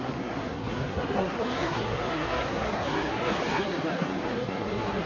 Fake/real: fake